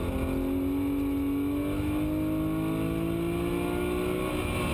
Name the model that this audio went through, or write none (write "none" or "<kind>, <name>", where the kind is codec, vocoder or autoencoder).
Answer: none